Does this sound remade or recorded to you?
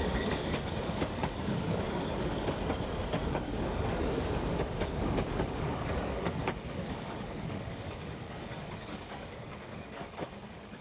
remade